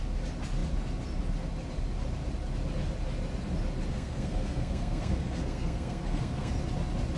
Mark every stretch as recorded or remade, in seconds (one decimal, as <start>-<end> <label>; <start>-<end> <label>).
0.0-3.9 recorded; 3.9-6.5 remade; 6.5-7.2 recorded